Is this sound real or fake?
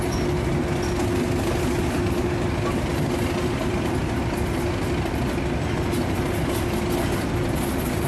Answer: real